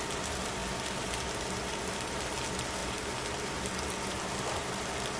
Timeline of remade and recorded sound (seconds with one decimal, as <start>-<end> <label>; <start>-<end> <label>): 0.0-5.2 recorded